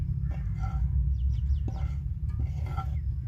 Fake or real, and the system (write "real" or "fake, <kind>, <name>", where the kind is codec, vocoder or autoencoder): real